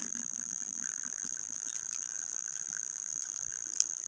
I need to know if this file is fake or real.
fake